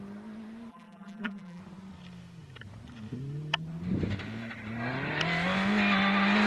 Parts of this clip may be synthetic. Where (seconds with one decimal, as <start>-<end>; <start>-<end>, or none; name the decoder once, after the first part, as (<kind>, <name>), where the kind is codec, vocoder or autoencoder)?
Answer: 0.7-1.6 (vocoder, BigVGAN v2)